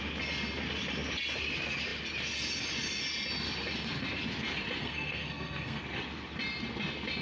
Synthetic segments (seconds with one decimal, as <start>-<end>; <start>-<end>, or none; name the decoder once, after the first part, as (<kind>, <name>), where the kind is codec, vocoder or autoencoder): 4.8-5.8 (codec, SNAC)